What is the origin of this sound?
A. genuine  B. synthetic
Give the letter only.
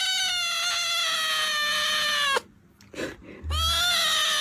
A